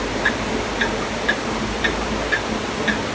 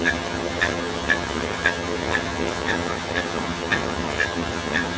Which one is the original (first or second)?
first